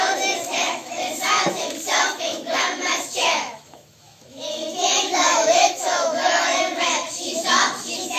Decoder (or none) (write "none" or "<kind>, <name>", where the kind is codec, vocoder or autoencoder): autoencoder, DAC-VAE